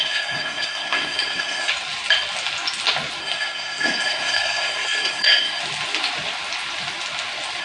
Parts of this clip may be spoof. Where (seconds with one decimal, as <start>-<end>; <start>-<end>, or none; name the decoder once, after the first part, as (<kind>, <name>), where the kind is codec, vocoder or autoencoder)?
0.0-1.7 (codec, SNAC); 3.2-5.6